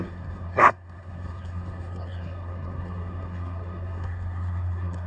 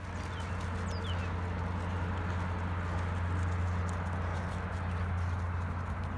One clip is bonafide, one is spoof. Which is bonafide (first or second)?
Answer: second